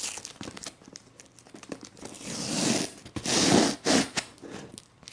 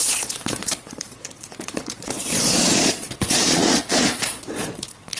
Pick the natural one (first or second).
first